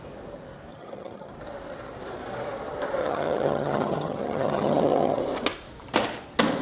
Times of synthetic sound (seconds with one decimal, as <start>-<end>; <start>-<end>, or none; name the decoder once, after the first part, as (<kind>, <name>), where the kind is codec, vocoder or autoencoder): 0.7-1.3 (vocoder, HiFi-GAN); 3.0-5.2